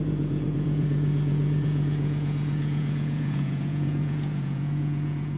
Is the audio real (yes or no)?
no